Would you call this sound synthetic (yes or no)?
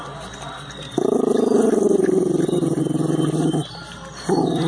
no